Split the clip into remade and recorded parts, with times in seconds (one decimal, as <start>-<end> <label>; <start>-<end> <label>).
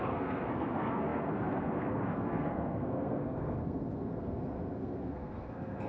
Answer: 0.0-5.9 remade